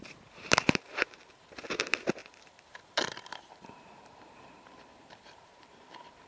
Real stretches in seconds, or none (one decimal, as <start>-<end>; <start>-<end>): none